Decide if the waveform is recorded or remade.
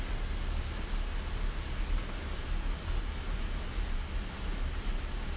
recorded